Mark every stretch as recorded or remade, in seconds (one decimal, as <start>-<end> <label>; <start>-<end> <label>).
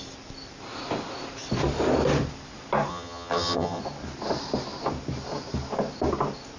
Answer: 0.0-2.9 recorded; 2.9-3.8 remade; 3.8-6.6 recorded